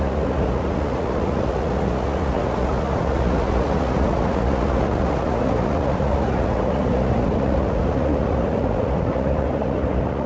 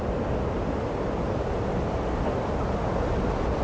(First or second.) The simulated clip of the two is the first